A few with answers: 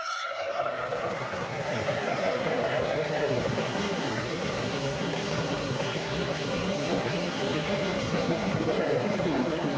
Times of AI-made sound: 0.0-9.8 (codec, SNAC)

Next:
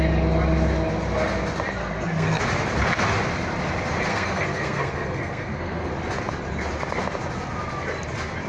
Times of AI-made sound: 1.8-2.4 (codec, SNAC); 4.1-5.9

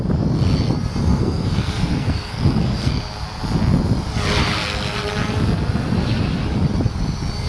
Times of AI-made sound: 1.1-3.0 (codec, SNAC)

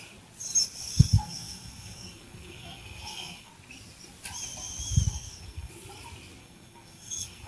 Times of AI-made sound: 0.9-3.5 (codec, SNAC); 5.1-5.7; 6.4-7.5